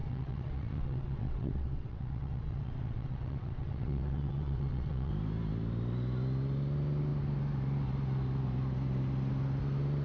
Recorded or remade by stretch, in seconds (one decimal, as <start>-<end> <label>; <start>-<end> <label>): 0.0-5.1 remade; 5.1-10.0 recorded